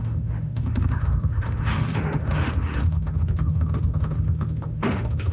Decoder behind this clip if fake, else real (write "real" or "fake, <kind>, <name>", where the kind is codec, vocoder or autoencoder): fake, autoencoder, DAC-VAE